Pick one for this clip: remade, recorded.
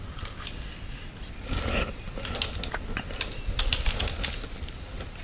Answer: recorded